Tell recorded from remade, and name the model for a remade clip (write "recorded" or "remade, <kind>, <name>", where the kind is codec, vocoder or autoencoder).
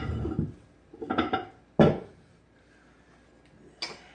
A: recorded